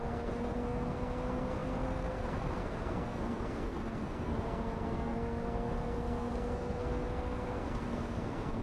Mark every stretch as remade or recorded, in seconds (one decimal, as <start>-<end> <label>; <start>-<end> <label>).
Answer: 0.0-8.6 remade